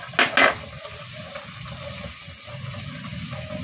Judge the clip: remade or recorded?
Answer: recorded